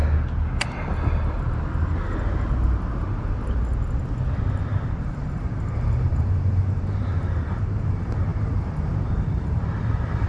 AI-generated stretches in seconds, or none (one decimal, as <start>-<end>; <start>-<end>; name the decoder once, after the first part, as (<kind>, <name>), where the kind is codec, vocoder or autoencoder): 5.0-10.3 (vocoder, BigVGAN v2)